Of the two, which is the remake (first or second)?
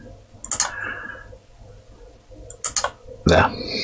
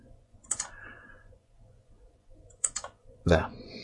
second